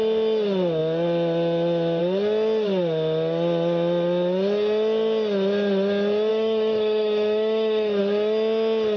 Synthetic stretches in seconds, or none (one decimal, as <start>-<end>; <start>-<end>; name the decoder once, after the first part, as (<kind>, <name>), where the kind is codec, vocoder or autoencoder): 6.3-8.0 (autoencoder, DAC-VAE)